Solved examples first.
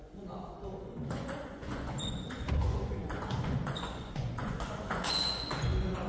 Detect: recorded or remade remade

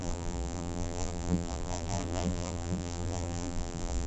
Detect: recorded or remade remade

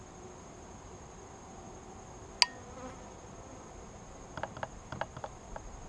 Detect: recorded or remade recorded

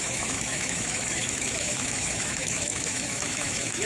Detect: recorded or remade remade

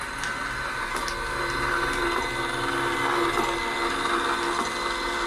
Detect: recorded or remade recorded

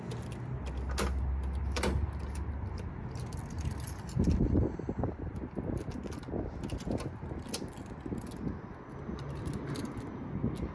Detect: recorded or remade recorded